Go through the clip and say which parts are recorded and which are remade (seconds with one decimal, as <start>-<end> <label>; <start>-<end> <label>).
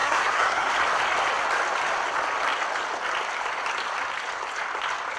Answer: 0.0-0.7 remade; 0.7-5.2 recorded